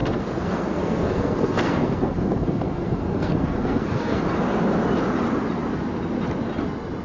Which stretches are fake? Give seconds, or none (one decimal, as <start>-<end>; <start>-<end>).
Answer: 0.0-4.2